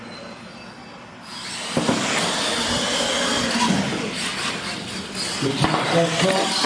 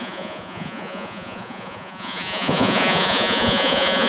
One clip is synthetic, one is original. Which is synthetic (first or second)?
second